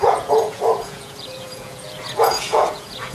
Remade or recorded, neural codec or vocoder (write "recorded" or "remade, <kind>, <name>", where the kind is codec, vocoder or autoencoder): remade, vocoder, Vocos